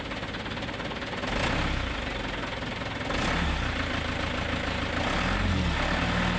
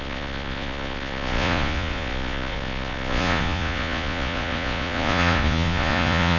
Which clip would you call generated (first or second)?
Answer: second